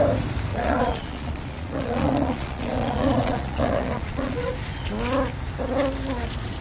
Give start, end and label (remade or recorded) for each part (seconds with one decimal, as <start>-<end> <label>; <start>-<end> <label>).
0.0-0.5 recorded; 0.5-4.5 remade; 4.5-6.6 recorded